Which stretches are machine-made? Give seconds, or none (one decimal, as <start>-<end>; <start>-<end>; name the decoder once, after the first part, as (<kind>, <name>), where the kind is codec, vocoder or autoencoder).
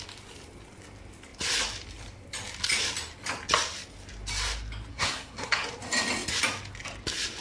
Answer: 4.9-5.7 (codec, SNAC)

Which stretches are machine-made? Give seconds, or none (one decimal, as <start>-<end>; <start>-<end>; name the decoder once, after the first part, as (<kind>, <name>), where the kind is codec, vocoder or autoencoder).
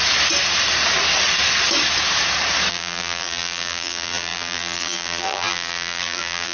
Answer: 2.7-6.5 (vocoder, BigVGAN v2)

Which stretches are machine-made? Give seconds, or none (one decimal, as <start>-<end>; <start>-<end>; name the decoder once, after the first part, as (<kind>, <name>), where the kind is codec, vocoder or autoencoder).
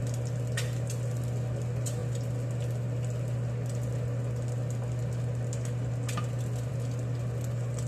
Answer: none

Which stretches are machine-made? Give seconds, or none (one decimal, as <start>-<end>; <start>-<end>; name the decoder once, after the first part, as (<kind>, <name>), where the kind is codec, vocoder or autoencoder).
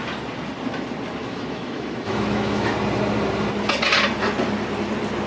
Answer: 1.2-2.7 (autoencoder, DAC-VAE)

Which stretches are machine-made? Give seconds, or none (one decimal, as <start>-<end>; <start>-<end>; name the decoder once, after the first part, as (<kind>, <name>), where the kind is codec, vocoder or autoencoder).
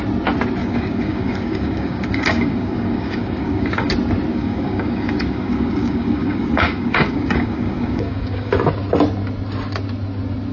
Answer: 0.6-3.9 (codec, DAC); 4.3-8.5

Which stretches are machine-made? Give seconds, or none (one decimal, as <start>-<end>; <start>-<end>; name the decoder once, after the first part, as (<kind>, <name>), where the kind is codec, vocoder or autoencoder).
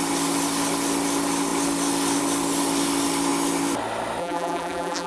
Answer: 4.2-5.1 (vocoder, BigVGAN v2)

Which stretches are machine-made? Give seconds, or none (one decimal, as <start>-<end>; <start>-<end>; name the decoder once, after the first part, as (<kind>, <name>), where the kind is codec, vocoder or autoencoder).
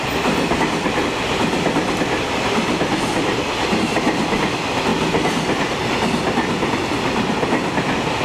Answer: none